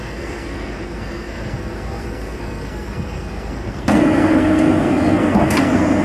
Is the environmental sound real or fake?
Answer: fake